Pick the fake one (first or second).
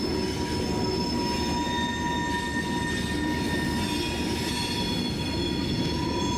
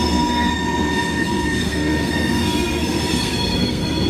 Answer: second